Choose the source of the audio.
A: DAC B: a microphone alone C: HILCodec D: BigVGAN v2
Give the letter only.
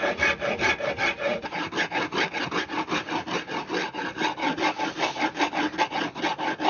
B